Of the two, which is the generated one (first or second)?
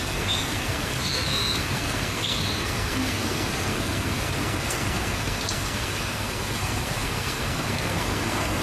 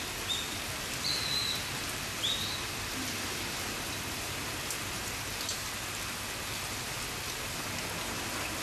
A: first